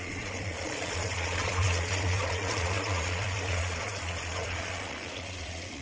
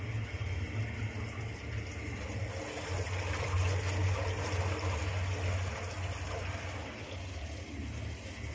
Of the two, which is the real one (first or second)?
second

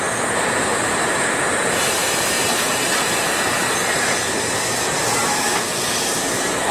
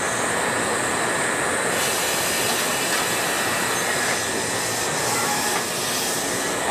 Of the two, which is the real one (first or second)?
second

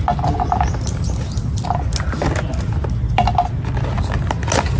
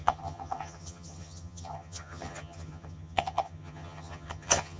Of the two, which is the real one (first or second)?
first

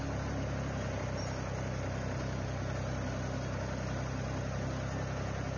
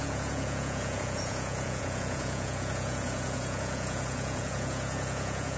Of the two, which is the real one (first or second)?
first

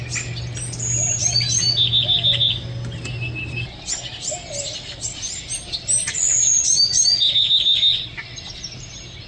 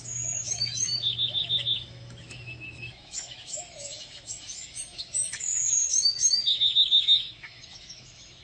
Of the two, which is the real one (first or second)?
first